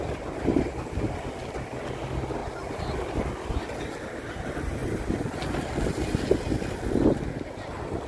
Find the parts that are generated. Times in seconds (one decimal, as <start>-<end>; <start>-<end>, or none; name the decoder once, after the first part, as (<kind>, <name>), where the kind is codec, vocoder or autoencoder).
none